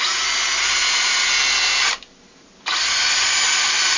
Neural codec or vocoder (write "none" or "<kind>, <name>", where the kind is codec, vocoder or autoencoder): none